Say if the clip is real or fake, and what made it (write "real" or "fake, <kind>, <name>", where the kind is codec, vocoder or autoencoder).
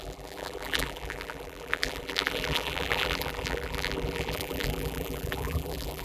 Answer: fake, vocoder, BigVGAN v2